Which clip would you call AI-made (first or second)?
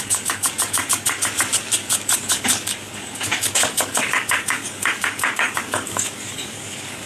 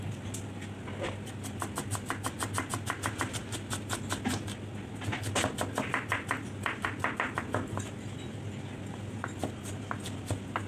first